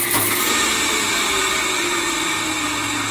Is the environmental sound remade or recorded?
remade